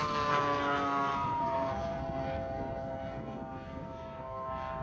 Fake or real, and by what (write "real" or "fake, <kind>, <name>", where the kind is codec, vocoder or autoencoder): fake, codec, SNAC